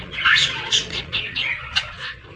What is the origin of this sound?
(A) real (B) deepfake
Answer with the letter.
B